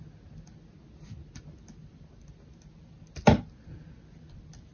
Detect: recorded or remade recorded